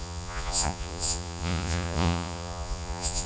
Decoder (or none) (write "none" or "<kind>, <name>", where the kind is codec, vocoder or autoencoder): vocoder, Vocos